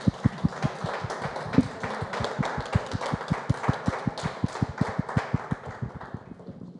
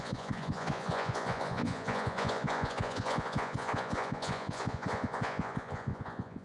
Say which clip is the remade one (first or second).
second